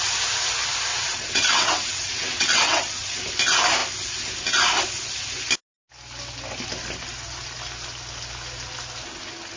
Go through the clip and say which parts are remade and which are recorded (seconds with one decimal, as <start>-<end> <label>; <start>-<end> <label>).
0.0-0.9 recorded; 0.9-3.2 remade; 3.2-9.6 recorded